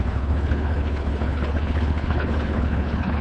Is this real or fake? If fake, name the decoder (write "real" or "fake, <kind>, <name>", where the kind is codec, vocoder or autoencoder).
fake, codec, HILCodec